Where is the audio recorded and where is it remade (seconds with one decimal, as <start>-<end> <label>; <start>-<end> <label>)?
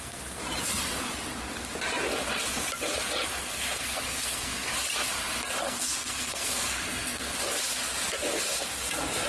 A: 0.0-0.4 remade; 0.4-3.4 recorded; 3.4-4.7 remade; 4.7-5.6 recorded; 5.6-7.3 remade; 7.3-9.3 recorded